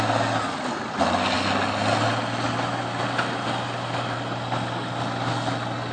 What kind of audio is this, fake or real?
real